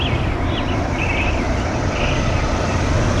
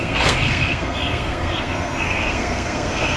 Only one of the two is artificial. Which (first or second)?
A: second